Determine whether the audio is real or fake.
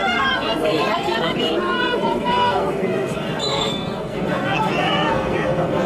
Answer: fake